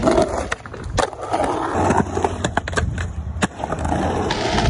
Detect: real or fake real